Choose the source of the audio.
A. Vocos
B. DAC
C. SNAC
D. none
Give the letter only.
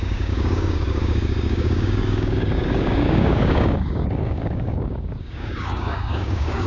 B